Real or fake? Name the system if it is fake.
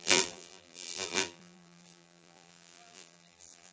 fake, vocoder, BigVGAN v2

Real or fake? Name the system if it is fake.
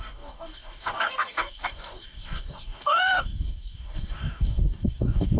fake, codec, DAC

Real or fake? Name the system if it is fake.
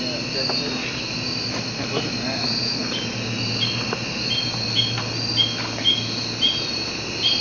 real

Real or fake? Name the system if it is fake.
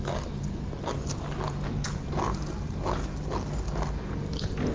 real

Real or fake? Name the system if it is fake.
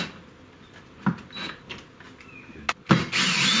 real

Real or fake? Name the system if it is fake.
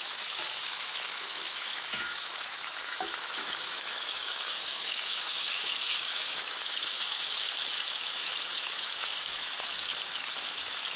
fake, autoencoder, DAC-VAE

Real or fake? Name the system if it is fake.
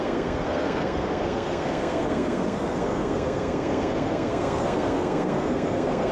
fake, codec, SNAC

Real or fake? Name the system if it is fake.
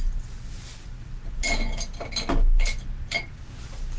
real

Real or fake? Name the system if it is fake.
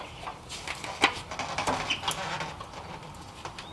real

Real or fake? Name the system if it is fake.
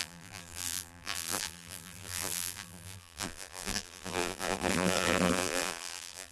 fake, vocoder, BigVGAN v2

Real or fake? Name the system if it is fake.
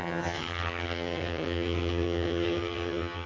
fake, vocoder, HiFi-GAN